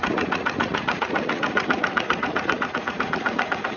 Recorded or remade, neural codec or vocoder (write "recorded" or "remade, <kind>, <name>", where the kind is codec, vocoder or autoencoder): remade, vocoder, Vocos